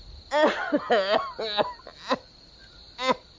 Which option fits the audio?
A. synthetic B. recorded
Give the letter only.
B